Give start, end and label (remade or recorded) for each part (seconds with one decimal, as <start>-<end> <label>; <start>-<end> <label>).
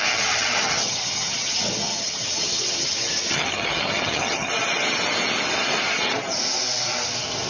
0.0-4.5 remade; 4.5-7.5 recorded